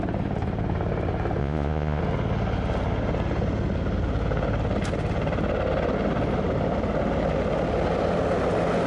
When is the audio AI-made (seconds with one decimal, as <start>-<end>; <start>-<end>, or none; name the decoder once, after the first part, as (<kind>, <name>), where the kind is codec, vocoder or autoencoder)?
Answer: 1.4-2.0 (vocoder, Vocos)